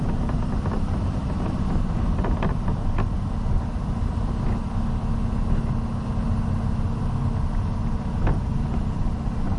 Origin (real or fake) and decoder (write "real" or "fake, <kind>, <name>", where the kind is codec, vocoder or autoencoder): real